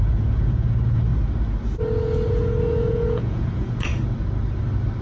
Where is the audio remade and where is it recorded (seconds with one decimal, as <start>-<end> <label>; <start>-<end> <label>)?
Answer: 0.0-1.1 remade; 1.1-2.3 recorded; 2.3-3.9 remade; 3.9-5.0 recorded